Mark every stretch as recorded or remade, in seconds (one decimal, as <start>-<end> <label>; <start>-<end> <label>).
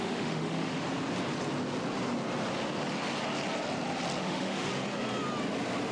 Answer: 0.0-0.7 remade; 0.7-4.2 recorded; 4.2-4.7 remade; 4.7-5.9 recorded